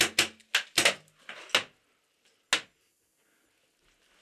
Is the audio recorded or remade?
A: recorded